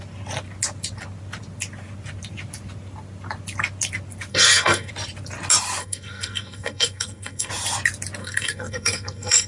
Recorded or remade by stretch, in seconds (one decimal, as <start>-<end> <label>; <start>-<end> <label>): 0.0-4.3 recorded; 4.3-4.9 remade; 4.9-5.8 recorded; 5.8-7.5 remade; 7.5-8.2 recorded; 8.2-9.5 remade